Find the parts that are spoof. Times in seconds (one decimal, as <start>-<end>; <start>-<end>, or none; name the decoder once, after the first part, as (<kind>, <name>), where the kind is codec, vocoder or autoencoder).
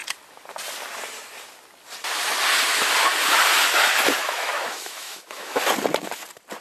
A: 4.2-5.6 (autoencoder, DAC-VAE)